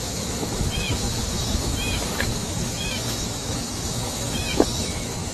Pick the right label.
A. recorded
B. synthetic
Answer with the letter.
B